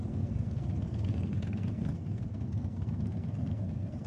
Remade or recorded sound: remade